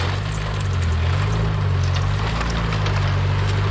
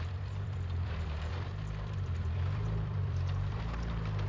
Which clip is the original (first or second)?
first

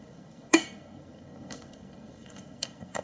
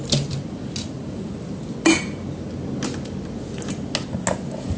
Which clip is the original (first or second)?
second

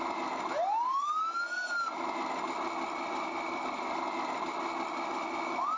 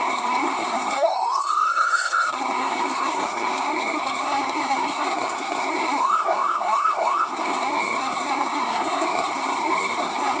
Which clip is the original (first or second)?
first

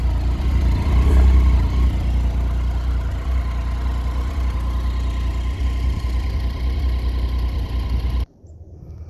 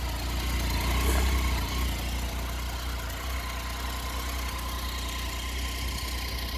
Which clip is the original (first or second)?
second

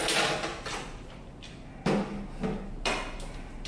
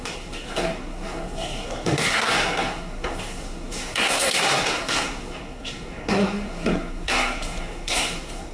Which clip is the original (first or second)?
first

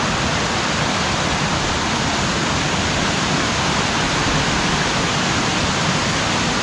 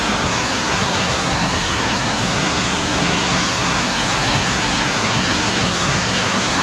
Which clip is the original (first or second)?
first